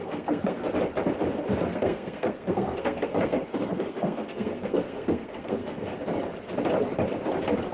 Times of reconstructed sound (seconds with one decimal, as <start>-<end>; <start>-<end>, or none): 0.0-0.6; 1.7-6.0